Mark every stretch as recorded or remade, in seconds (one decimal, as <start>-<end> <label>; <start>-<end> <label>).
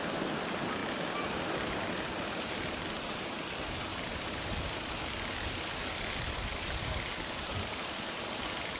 0.0-3.9 recorded; 3.9-4.9 remade; 4.9-8.8 recorded